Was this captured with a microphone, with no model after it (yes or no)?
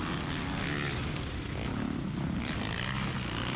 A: yes